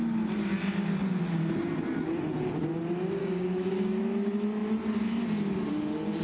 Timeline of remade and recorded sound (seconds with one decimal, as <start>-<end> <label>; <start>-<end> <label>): 0.0-3.2 recorded; 3.2-4.0 remade; 4.0-6.2 recorded